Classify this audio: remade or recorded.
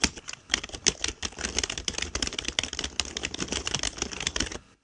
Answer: remade